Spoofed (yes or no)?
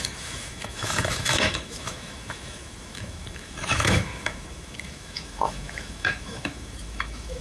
yes